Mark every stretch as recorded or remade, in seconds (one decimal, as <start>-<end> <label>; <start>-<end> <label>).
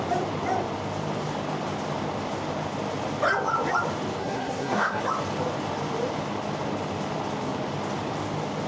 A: 0.0-4.2 recorded; 4.2-5.0 remade; 5.0-8.7 recorded